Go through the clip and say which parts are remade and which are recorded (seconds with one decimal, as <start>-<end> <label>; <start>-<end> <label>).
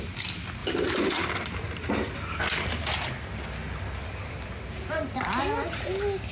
0.0-0.6 recorded; 0.6-1.9 remade; 1.9-6.3 recorded